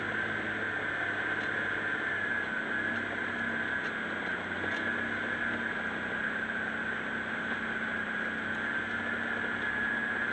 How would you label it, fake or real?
real